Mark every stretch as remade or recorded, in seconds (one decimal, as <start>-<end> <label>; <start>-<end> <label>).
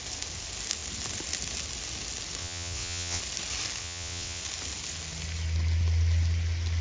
0.0-2.4 recorded; 2.4-3.2 remade; 3.2-3.8 recorded; 3.8-4.4 remade; 4.4-6.8 recorded